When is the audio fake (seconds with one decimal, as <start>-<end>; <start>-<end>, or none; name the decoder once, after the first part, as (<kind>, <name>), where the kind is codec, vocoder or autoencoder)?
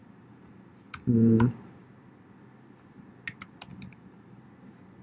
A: 0.0-1.8 (vocoder, BigVGAN v2); 3.7-4.4